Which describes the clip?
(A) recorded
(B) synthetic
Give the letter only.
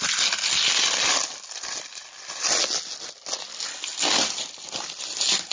A